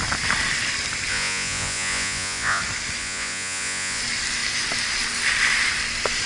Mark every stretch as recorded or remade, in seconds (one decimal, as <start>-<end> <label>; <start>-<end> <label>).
0.0-1.1 recorded; 1.1-2.6 remade; 2.6-3.0 recorded; 3.0-4.0 remade; 4.0-6.3 recorded